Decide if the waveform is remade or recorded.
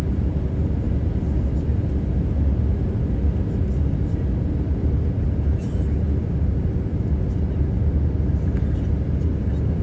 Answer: recorded